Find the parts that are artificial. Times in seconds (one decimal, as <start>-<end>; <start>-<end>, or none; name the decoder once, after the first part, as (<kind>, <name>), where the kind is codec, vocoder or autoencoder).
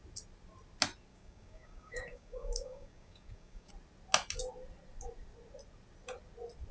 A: 1.1-3.7 (codec, DAC)